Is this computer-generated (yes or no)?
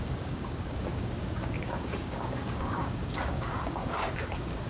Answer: yes